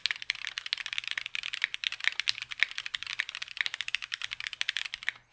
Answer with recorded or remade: recorded